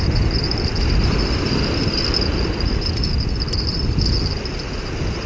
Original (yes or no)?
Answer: yes